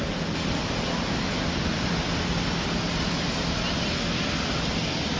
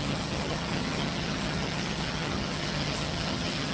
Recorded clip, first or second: first